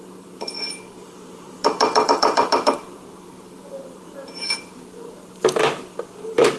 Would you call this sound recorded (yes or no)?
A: no